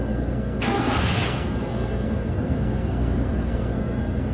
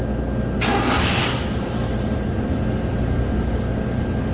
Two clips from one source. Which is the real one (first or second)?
second